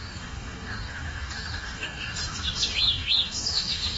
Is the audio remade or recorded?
remade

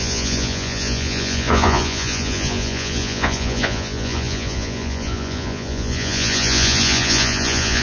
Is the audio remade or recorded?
remade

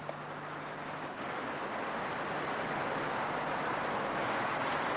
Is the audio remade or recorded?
recorded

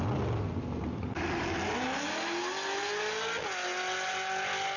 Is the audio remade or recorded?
recorded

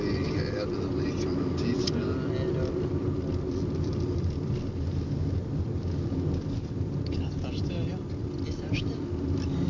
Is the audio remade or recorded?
recorded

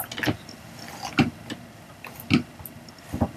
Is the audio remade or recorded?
recorded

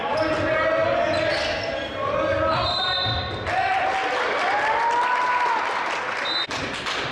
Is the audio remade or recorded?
recorded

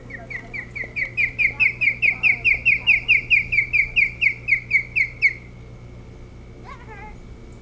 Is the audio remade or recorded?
recorded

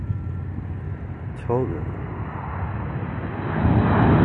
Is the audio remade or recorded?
recorded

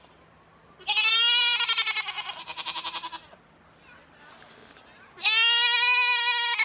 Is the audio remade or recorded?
recorded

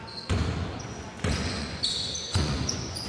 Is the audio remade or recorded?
remade